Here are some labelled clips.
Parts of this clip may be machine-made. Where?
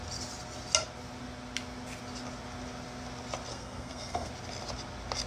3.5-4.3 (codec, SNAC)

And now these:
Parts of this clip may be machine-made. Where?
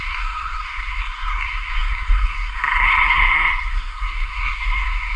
0.0-5.2 (codec, SNAC)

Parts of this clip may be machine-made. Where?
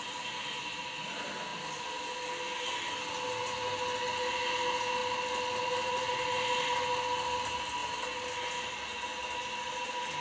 none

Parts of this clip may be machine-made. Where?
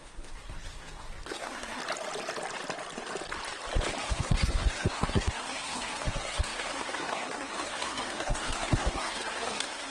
0.0-1.8 (codec, SNAC); 4.0-9.9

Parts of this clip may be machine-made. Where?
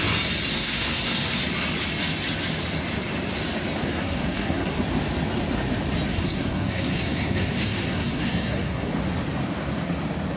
0.5-1.4 (codec, SNAC); 3.8-4.8; 6.1-8.9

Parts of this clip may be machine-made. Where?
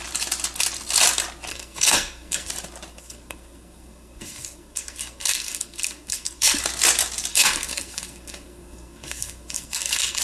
1.5-2.5 (codec, SNAC); 2.9-6.6; 7.3-10.2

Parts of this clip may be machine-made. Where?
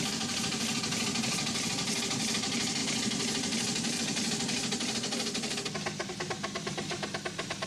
none